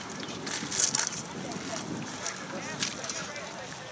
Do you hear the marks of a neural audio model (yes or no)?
no